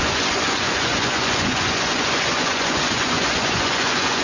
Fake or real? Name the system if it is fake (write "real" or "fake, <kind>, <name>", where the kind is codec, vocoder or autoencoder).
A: fake, vocoder, Vocos